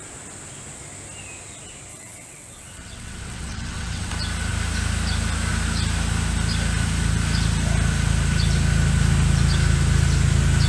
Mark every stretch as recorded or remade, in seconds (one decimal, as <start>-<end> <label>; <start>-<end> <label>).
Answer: 0.0-1.9 recorded; 1.9-4.1 remade; 4.1-10.7 recorded